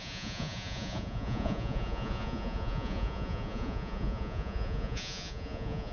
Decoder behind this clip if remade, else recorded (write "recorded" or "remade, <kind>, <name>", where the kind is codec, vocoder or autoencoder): remade, vocoder, Vocos